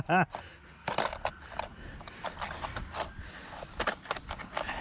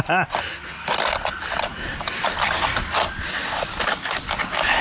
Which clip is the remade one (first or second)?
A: second